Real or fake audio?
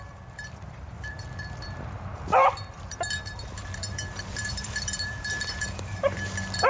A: fake